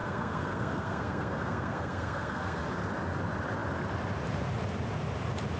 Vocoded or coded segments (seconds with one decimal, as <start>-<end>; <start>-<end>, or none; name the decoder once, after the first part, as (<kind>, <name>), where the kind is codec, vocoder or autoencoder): 0.0-2.6 (codec, SNAC)